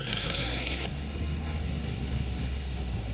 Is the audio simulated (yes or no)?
yes